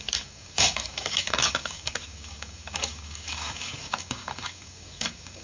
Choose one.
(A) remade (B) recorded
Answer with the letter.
A